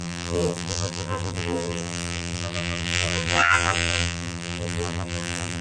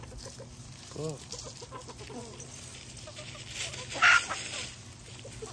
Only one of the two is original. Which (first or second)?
second